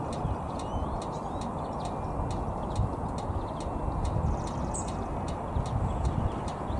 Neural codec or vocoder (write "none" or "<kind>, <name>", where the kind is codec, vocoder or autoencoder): none